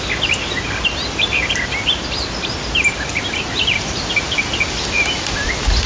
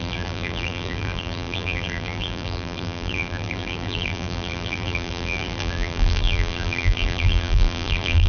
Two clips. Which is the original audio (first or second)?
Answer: first